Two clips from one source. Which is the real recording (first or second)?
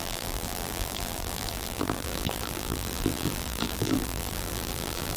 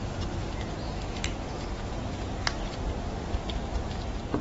second